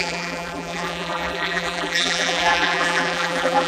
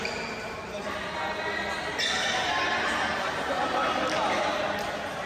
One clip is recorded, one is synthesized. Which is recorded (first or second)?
second